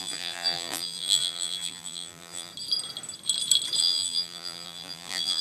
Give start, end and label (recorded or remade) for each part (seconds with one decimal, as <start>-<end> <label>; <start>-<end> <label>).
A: 0.0-2.5 remade; 2.5-3.8 recorded; 3.8-5.4 remade